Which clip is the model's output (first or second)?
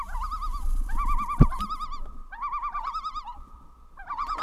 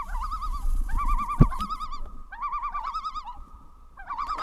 second